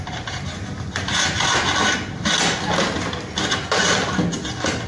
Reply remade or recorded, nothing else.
recorded